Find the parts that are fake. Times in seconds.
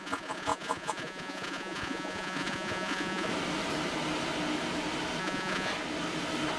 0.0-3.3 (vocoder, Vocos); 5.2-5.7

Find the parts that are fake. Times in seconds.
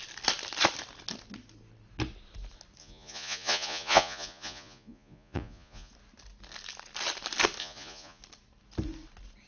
2.8-5.9 (vocoder, Vocos); 7.6-8.2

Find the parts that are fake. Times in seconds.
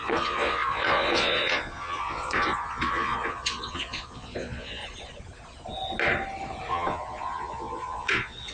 0.0-4.8 (vocoder, Vocos); 6.7-8.5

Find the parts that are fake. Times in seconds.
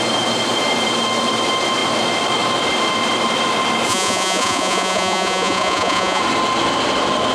3.9-6.2 (vocoder, Vocos)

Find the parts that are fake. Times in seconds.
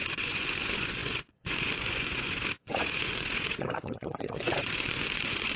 0.0-5.6 (vocoder, Vocos)